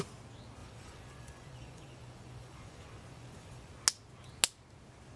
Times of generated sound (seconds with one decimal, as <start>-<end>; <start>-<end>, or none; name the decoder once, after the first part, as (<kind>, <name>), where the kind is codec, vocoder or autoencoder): 0.6-3.7 (vocoder, Vocos)